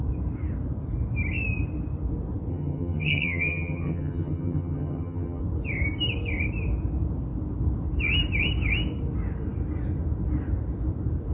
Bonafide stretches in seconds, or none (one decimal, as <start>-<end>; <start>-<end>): 0.0-2.5; 5.4-11.3